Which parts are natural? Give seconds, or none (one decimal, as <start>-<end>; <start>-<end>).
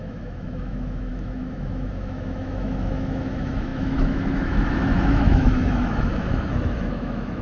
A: none